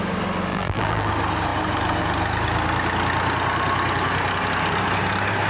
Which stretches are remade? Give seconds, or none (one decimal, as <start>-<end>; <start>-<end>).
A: 0.5-1.1